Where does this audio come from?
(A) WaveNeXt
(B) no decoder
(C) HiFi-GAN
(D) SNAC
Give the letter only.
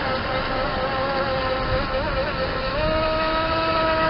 B